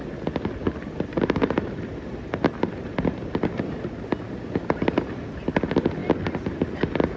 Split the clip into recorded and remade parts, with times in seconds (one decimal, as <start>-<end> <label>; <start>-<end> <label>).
0.0-0.6 recorded; 0.6-3.8 remade; 3.8-7.2 recorded